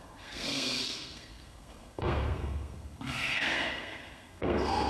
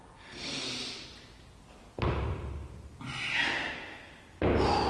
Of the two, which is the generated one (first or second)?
first